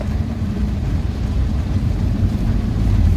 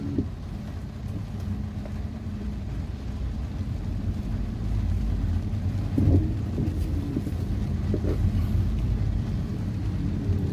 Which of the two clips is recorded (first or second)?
second